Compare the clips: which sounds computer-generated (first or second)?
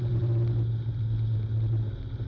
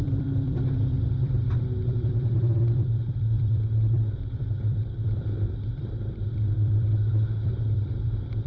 second